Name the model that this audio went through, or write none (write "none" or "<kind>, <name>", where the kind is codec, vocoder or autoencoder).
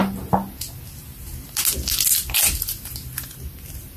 none